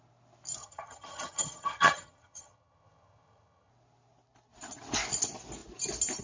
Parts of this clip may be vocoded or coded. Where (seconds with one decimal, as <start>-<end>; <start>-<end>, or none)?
0.6-3.7